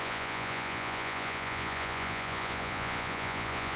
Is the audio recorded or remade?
remade